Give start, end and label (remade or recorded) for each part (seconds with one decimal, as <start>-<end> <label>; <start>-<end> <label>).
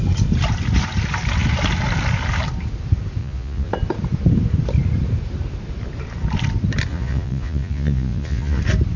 0.0-3.2 recorded; 3.2-3.7 remade; 3.7-6.9 recorded; 6.9-8.6 remade; 8.6-9.0 recorded